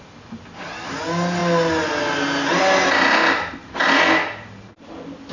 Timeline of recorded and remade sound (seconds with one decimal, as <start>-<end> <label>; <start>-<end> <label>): 0.0-5.3 recorded